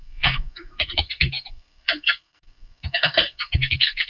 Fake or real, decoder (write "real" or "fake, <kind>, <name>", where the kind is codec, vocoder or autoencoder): fake, codec, SNAC